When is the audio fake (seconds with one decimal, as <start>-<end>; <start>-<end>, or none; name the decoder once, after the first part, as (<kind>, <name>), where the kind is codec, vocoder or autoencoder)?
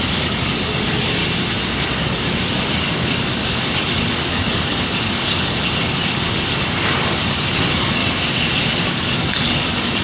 0.0-1.2 (codec, DAC); 1.7-8.0; 8.7-10.0